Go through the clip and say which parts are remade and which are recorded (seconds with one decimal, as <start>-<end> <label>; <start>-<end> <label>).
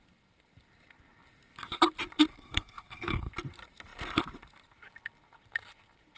0.0-2.3 recorded; 2.3-3.3 remade; 3.3-6.2 recorded